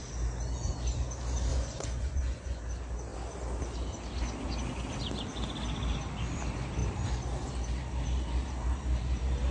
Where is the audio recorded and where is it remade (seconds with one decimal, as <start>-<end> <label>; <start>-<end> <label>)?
0.0-1.5 recorded; 1.5-2.6 remade; 2.6-9.5 recorded